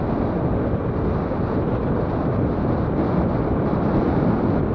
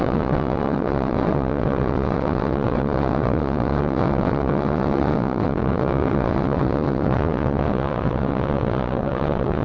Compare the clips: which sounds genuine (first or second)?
first